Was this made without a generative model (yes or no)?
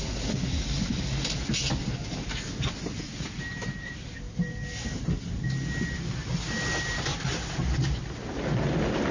yes